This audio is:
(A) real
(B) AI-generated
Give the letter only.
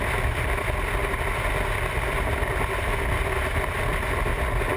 A